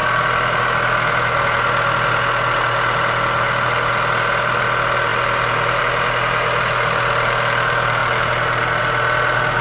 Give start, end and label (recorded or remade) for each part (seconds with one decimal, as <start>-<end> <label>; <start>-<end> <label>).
0.0-9.6 recorded